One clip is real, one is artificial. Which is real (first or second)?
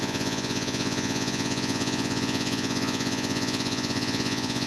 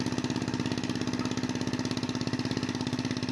second